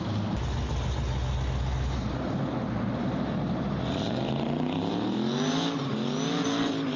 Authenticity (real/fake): real